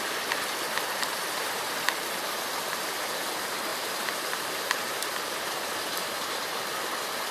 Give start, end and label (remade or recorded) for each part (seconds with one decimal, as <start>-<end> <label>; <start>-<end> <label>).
0.0-1.1 recorded; 1.1-3.1 remade; 3.1-3.7 recorded; 3.7-6.6 remade; 6.6-7.3 recorded

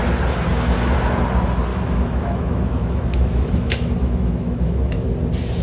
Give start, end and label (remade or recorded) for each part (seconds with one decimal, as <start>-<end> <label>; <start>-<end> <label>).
0.0-1.7 recorded; 1.7-5.1 remade; 5.1-5.6 recorded

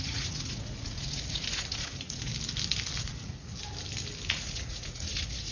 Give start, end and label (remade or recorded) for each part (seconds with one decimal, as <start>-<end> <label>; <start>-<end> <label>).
0.0-2.3 remade; 2.3-3.0 recorded; 3.0-3.5 remade; 3.5-4.3 recorded; 4.3-5.5 remade

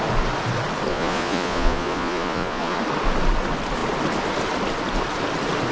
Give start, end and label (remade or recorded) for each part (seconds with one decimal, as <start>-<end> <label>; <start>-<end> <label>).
0.0-0.9 recorded; 0.9-2.8 remade; 2.8-5.7 recorded